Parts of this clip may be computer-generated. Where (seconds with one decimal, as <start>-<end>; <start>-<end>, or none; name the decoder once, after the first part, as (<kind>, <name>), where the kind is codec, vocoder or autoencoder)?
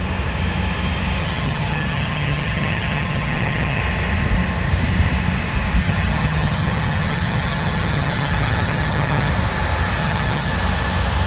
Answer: 1.2-3.8 (vocoder, HiFi-GAN); 5.8-9.3; 10.0-10.5